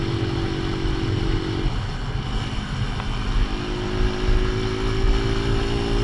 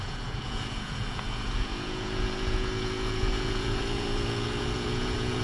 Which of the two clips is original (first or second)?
first